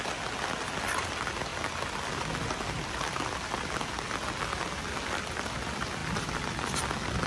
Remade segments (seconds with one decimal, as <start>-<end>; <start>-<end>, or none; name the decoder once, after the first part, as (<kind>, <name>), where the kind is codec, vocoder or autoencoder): none